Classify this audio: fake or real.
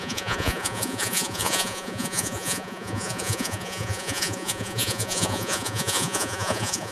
fake